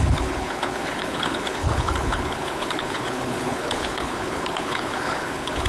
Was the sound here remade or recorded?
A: remade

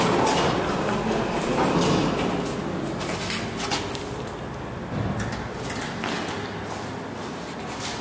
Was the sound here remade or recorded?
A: recorded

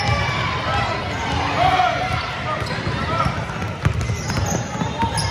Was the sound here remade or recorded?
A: recorded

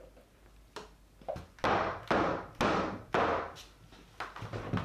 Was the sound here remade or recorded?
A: recorded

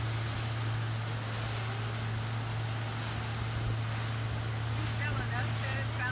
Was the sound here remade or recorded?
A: recorded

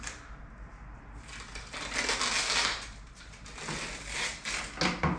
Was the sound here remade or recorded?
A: recorded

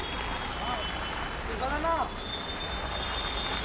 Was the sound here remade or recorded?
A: recorded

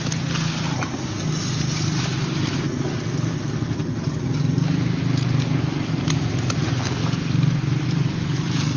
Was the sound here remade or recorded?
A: recorded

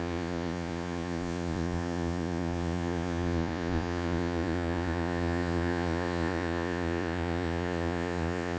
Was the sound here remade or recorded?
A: remade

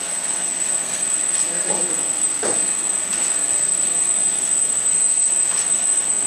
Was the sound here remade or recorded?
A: remade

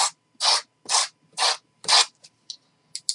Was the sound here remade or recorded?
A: recorded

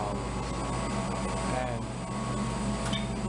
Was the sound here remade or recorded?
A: recorded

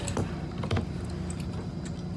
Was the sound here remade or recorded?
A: recorded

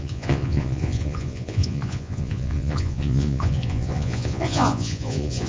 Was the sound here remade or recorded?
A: remade